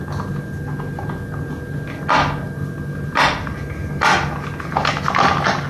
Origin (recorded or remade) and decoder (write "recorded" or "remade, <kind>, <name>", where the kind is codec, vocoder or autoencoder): recorded